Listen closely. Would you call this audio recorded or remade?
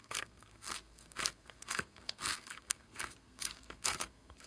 remade